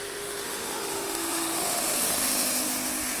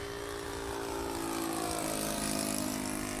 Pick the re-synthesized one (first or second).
first